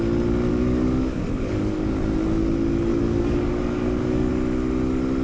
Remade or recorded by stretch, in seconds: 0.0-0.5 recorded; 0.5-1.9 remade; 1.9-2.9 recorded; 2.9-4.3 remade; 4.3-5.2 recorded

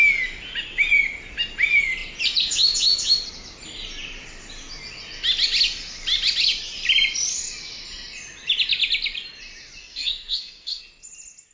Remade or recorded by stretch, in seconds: 0.0-9.8 recorded; 9.8-10.8 remade; 10.8-11.5 recorded

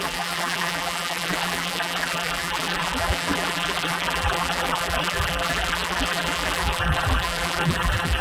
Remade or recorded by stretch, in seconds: 0.0-8.2 remade

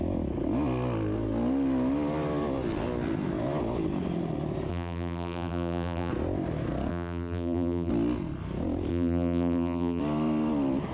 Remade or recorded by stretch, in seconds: 0.0-4.7 recorded; 4.7-6.1 remade; 6.1-6.9 recorded; 6.9-7.9 remade; 7.9-8.9 recorded; 8.9-10.0 remade; 10.0-10.9 recorded